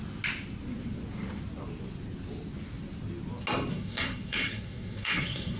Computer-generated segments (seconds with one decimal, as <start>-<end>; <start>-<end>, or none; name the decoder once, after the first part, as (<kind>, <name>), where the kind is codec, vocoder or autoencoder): 3.7-5.6 (codec, SNAC)